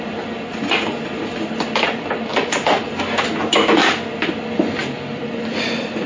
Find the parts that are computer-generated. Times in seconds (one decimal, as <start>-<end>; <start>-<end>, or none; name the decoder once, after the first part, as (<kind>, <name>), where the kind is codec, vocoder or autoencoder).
2.3-3.0 (vocoder, BigVGAN v2); 4.8-5.5